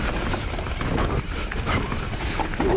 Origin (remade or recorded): recorded